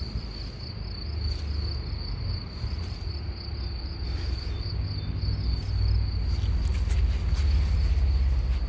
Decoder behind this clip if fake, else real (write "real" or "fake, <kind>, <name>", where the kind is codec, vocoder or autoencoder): real